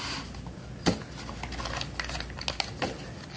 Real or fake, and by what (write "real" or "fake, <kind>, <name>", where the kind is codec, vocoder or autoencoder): real